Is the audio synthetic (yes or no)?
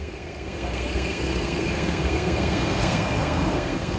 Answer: yes